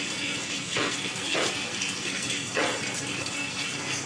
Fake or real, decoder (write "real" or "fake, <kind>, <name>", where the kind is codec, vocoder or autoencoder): fake, codec, SNAC